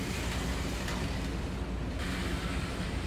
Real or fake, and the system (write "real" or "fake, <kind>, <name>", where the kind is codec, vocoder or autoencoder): real